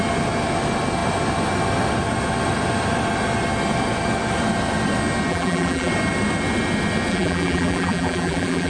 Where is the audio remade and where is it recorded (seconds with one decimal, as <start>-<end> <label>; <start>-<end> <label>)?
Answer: 0.0-5.3 recorded; 5.3-5.9 remade; 5.9-7.1 recorded; 7.1-8.7 remade

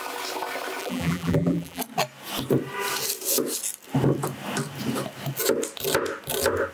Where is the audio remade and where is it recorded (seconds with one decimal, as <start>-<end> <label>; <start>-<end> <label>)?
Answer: 0.0-0.8 recorded; 0.8-1.8 remade; 1.8-6.7 recorded

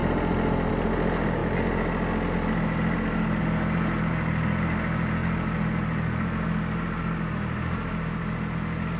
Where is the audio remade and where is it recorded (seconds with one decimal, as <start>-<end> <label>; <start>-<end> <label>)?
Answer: 0.0-9.0 recorded

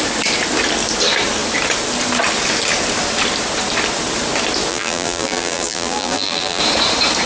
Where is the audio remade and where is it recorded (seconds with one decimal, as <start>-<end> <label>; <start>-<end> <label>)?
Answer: 0.0-4.7 recorded; 4.7-6.6 remade; 6.6-7.3 recorded

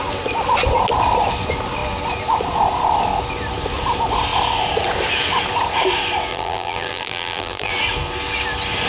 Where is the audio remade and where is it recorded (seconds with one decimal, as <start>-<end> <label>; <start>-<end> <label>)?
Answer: 0.0-6.3 recorded; 6.3-7.7 remade; 7.7-8.9 recorded

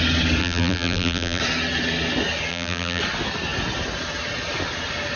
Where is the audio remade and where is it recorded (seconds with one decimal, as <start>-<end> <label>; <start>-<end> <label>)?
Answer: 0.0-0.4 recorded; 0.4-1.4 remade; 1.4-2.5 recorded; 2.5-3.0 remade; 3.0-5.2 recorded

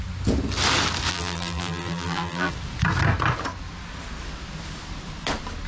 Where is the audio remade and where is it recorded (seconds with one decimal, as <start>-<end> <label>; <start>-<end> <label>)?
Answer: 0.0-1.1 recorded; 1.1-2.5 remade; 2.5-5.7 recorded